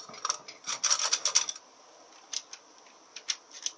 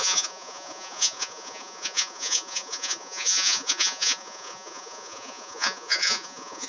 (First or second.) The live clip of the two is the first